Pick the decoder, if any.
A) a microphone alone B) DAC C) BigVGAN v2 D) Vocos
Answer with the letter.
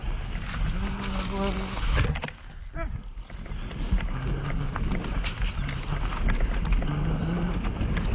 A